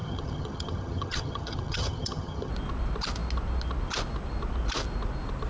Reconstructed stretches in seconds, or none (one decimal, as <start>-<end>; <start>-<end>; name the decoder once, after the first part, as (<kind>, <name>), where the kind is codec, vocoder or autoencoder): 0.0-2.5 (vocoder, HiFi-GAN)